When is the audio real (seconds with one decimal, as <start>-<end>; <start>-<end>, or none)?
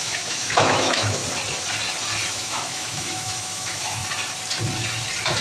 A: 1.2-2.3; 4.0-5.4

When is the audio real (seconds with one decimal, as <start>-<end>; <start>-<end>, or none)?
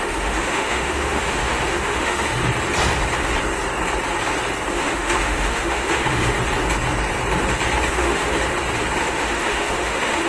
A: 2.4-4.7; 6.4-7.9; 8.3-9.0